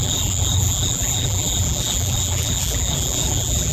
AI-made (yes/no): yes